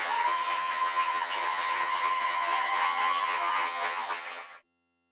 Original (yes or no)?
no